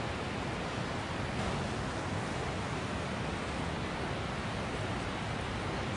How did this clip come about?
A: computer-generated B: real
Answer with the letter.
B